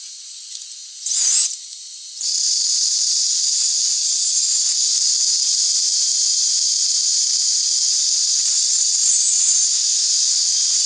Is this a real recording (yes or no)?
yes